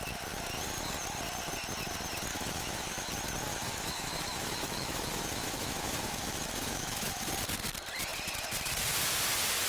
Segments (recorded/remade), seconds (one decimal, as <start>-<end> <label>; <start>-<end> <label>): 0.0-2.3 recorded; 2.3-3.1 remade; 3.1-3.5 recorded; 3.5-7.3 remade; 7.3-9.7 recorded